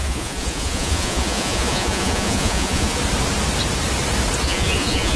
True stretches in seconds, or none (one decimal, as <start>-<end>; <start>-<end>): 3.0-4.4